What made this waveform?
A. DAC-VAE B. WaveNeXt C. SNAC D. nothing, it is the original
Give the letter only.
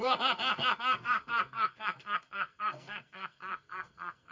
C